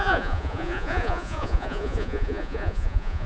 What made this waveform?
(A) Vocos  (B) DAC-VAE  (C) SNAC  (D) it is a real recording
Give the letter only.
A